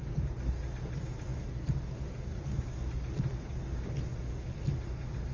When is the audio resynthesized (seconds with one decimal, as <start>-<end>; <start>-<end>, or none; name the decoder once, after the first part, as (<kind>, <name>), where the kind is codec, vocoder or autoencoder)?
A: none